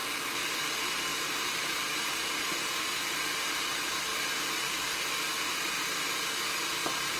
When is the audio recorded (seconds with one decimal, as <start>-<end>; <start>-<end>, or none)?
0.0-1.1; 2.5-7.2